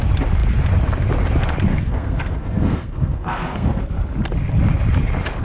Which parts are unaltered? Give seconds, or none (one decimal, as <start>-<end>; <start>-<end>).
0.0-1.7; 3.8-5.4